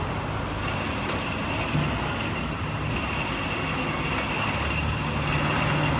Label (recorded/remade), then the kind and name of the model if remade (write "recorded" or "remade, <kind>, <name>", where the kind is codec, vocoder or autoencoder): recorded